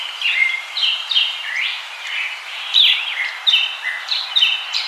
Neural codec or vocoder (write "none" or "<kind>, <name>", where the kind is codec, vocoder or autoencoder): vocoder, BigVGAN v2